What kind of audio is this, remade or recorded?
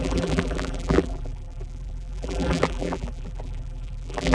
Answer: remade